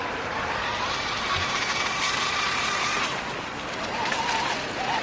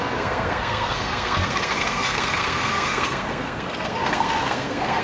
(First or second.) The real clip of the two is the first